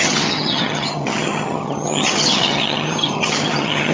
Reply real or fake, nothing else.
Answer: fake